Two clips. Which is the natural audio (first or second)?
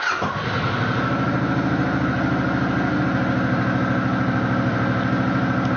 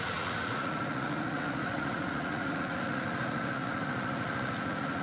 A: first